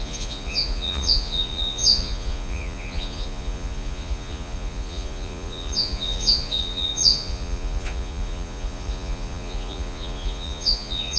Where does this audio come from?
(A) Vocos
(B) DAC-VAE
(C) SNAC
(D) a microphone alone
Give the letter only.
A